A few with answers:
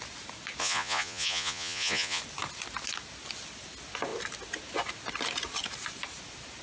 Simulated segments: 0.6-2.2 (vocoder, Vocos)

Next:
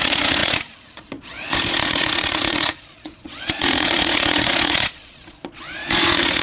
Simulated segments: 0.0-6.4 (vocoder, Vocos)

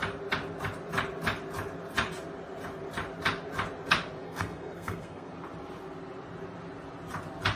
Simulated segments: 4.2-5.3 (codec, SNAC)

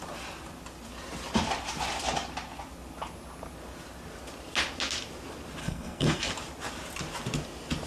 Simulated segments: 5.6-6.3 (codec, SNAC)